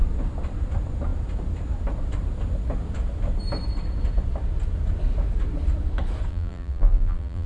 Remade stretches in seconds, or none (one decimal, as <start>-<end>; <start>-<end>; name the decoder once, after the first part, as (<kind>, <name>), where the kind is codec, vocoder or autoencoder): 6.3-7.5 (vocoder, BigVGAN v2)

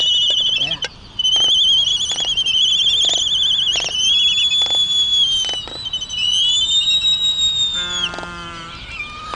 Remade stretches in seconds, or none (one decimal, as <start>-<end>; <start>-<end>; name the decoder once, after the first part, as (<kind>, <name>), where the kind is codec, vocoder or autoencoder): none

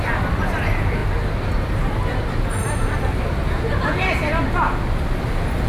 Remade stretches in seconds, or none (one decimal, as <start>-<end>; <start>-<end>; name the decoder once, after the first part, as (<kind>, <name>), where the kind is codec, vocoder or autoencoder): none

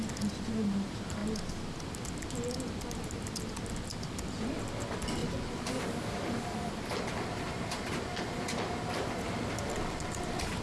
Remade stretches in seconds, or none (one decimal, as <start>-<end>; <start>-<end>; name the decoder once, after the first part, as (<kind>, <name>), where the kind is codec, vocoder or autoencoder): 5.2-10.6 (vocoder, BigVGAN v2)

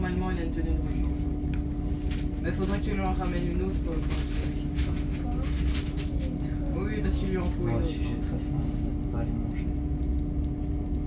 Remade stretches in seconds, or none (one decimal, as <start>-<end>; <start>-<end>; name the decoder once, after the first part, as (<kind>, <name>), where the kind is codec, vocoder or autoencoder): none

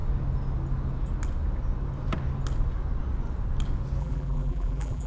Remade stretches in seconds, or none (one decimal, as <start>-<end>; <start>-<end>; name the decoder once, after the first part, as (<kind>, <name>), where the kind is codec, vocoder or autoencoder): 4.0-5.1 (vocoder, BigVGAN v2)